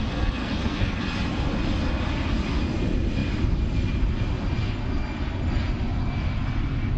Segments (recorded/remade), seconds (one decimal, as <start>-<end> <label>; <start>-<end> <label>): 0.0-0.4 recorded; 0.4-1.0 remade; 1.0-7.0 recorded